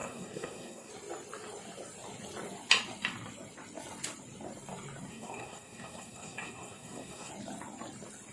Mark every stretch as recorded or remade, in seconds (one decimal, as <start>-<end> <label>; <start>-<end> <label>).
0.0-0.9 remade; 0.9-5.1 recorded; 5.1-7.3 remade; 7.3-8.3 recorded